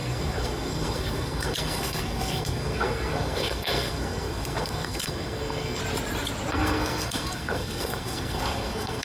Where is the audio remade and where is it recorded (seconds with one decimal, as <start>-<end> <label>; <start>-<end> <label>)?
0.0-5.8 remade; 5.8-6.5 recorded; 6.5-9.0 remade